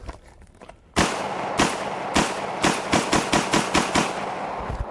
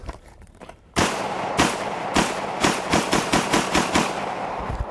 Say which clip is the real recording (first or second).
first